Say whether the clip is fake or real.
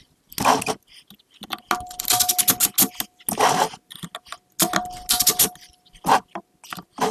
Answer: real